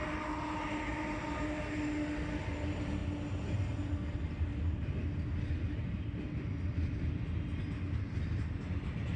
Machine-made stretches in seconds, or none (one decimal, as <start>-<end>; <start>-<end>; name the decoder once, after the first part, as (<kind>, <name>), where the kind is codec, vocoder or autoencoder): none